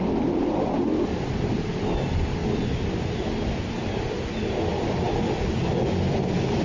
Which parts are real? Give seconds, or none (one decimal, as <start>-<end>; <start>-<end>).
0.0-6.6